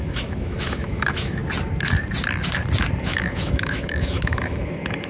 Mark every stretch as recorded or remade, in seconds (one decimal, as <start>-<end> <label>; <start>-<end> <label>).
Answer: 0.0-1.4 remade; 1.4-3.0 recorded; 3.0-5.1 remade